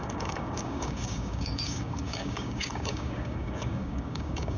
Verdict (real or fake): fake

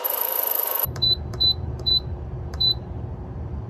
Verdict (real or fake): fake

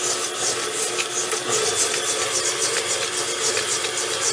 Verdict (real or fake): real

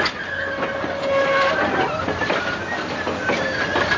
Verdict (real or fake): real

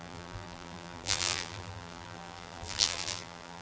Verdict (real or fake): fake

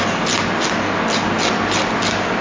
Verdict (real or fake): real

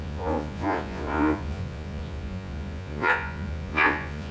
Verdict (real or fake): fake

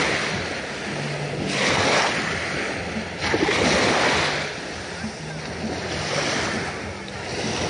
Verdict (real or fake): real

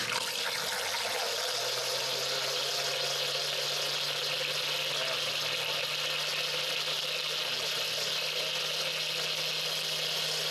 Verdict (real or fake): real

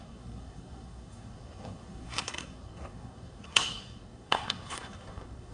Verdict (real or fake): fake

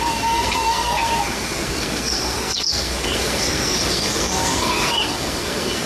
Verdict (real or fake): fake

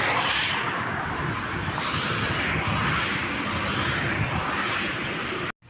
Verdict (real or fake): real